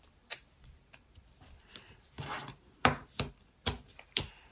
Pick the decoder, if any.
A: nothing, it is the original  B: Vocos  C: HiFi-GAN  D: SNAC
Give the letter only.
A